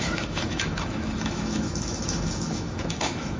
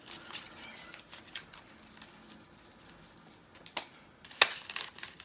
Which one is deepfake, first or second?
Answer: first